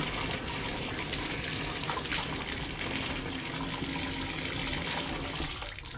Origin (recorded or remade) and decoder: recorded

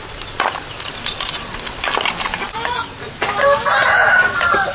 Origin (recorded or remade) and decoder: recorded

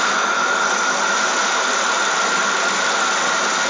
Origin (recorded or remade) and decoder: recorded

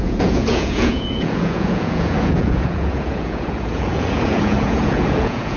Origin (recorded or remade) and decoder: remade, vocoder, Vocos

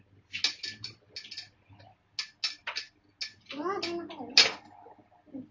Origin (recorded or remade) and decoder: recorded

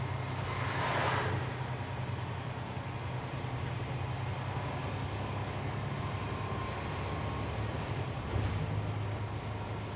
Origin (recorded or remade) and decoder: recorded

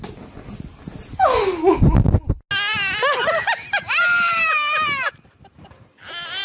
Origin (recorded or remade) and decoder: recorded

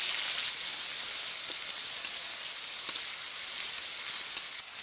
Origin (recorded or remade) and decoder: recorded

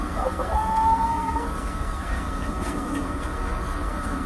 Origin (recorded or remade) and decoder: remade, codec, SNAC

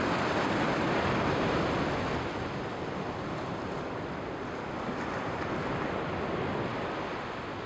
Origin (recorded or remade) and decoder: recorded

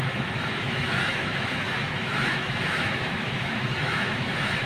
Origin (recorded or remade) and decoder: remade, autoencoder, DAC-VAE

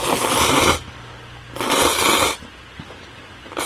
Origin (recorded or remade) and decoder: recorded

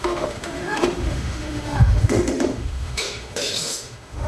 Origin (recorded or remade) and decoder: remade, autoencoder, DAC-VAE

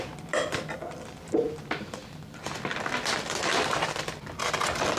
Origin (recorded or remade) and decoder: remade, vocoder, BigVGAN v2